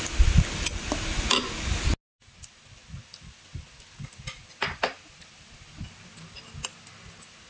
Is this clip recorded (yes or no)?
yes